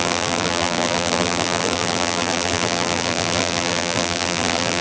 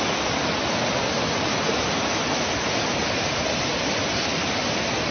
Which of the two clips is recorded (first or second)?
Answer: second